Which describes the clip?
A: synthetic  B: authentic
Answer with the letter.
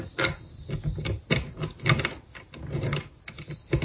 B